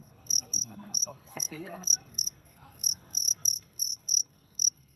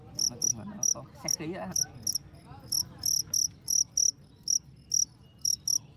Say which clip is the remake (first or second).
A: first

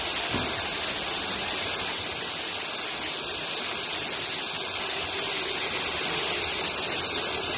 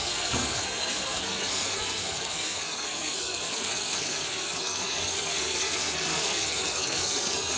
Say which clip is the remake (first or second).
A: second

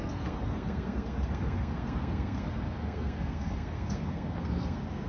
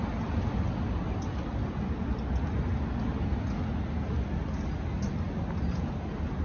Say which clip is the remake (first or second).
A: first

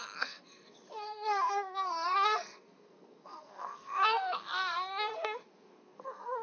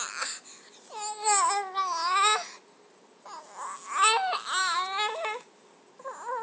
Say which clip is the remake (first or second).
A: first